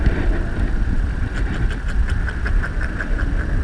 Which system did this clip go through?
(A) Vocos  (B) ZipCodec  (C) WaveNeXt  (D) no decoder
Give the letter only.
D